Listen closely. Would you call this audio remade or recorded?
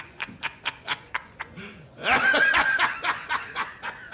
remade